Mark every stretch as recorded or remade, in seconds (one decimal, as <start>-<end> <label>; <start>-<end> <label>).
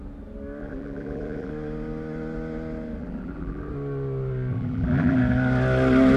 0.0-0.6 recorded; 0.6-1.5 remade; 1.5-3.0 recorded; 3.0-3.7 remade; 3.7-4.5 recorded; 4.5-5.2 remade; 5.2-6.2 recorded